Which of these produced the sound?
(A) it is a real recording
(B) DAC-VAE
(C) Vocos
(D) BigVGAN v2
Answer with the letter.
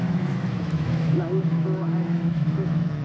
B